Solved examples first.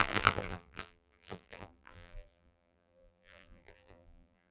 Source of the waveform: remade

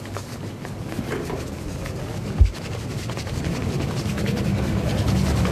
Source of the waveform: remade